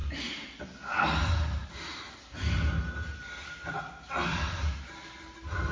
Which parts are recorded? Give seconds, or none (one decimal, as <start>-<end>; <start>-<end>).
0.0-5.7